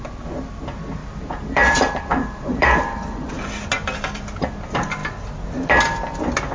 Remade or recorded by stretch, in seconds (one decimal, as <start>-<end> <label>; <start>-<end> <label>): 0.0-1.0 recorded; 1.0-3.3 remade; 3.3-6.5 recorded